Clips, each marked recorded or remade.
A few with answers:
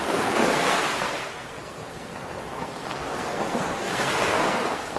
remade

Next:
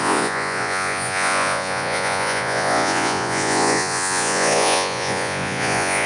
remade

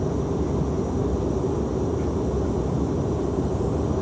recorded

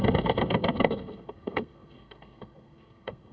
remade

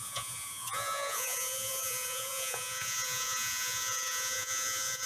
remade